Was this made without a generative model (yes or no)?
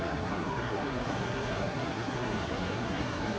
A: no